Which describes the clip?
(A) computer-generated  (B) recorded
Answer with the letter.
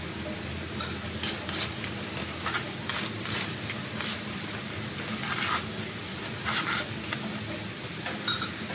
B